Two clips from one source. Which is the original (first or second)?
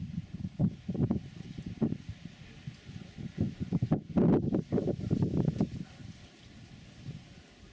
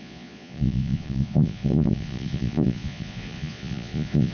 first